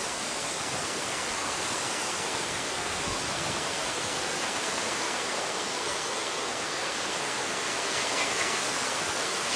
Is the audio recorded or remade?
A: remade